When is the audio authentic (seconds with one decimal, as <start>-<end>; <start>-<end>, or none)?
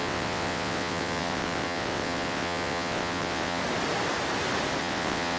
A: 3.6-4.8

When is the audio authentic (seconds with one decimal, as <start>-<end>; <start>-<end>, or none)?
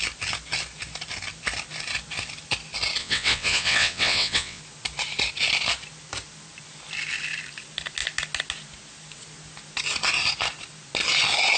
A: 0.0-3.0; 4.6-11.6